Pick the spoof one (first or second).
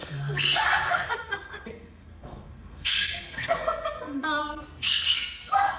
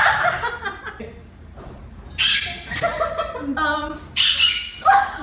first